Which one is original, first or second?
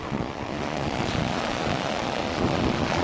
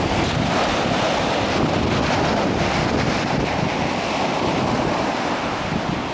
second